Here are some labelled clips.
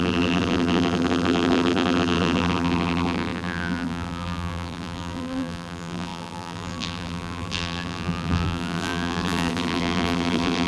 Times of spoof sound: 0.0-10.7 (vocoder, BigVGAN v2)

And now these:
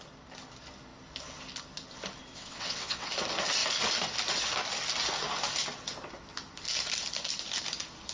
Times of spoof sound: 2.3-3.1 (vocoder, WaveNeXt)

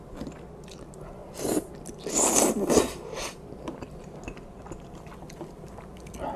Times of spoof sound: 1.2-1.7 (vocoder, BigVGAN v2)

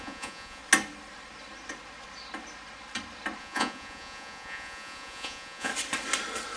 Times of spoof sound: 0.0-0.6 (vocoder, Vocos); 3.4-5.7

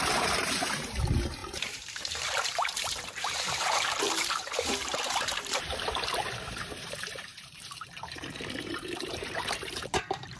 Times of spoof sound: 0.0-10.4 (vocoder, BigVGAN v2)

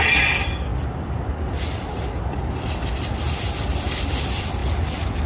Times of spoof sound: none